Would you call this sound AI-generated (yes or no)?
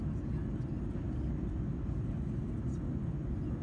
no